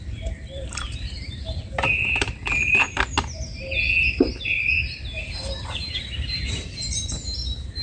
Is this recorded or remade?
remade